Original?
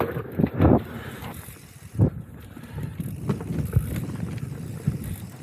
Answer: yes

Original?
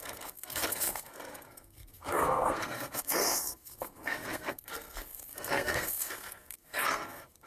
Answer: no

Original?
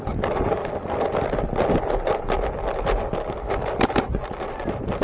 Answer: yes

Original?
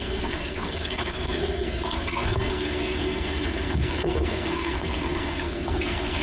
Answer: no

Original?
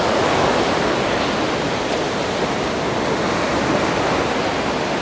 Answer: yes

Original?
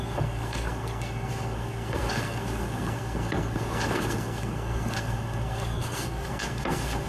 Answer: no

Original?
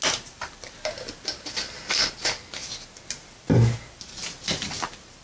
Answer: yes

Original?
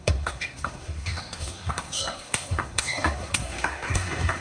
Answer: no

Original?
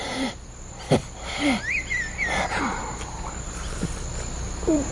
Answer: yes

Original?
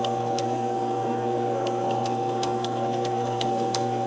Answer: no